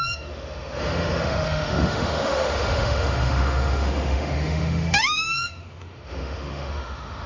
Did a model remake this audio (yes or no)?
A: yes